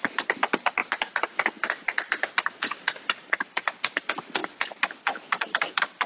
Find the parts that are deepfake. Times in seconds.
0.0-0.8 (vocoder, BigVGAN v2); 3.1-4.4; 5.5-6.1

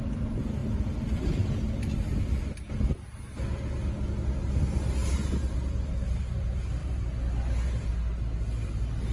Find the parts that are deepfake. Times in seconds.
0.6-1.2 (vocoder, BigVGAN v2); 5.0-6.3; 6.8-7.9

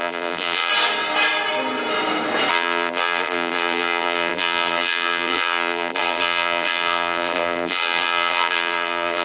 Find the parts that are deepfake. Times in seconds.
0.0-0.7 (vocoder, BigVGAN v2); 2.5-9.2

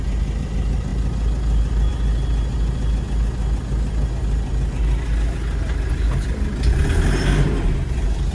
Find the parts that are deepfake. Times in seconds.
none